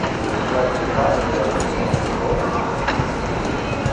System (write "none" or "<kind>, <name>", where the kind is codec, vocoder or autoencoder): none